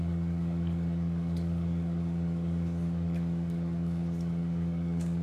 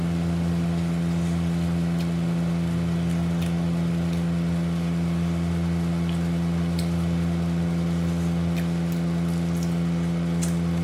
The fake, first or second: first